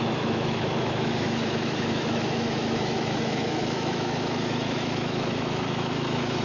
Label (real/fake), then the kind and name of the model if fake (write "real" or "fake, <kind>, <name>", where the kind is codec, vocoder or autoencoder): fake, autoencoder, DAC-VAE